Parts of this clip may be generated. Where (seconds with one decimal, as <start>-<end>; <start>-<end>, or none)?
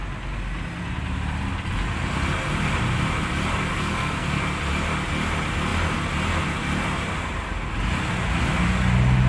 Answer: 3.7-4.4